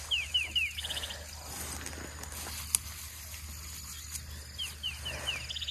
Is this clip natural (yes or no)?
yes